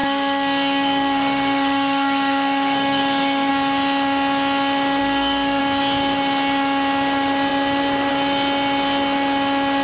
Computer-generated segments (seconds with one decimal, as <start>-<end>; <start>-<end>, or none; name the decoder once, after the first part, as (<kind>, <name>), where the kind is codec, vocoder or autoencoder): 0.0-3.5 (codec, SNAC); 5.0-5.6